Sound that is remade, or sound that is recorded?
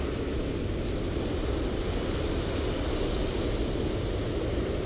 recorded